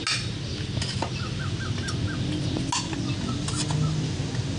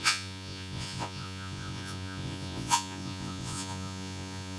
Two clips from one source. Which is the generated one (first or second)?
second